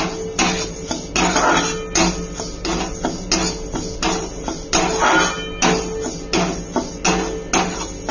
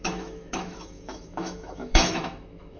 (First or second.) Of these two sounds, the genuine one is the first